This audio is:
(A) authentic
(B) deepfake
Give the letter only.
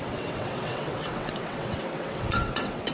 B